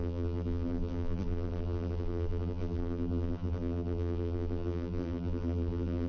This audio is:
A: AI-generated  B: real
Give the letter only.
A